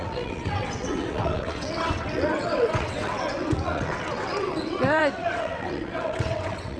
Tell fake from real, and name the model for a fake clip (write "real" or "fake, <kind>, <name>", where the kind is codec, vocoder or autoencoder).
fake, vocoder, WaveNeXt